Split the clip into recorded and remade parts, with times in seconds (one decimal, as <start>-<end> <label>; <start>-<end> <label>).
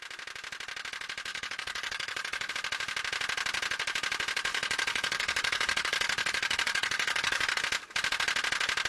0.0-1.3 recorded; 1.3-2.5 remade; 2.5-4.5 recorded; 4.5-7.6 remade; 7.6-8.9 recorded